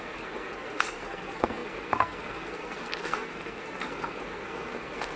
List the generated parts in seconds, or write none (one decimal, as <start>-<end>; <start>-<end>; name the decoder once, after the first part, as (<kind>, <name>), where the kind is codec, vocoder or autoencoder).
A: 0.0-5.2 (codec, SNAC)

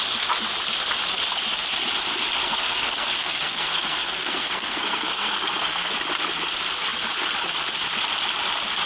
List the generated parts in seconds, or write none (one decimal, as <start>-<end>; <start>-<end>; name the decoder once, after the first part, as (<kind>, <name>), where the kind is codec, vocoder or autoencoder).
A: 2.4-5.9 (codec, SNAC)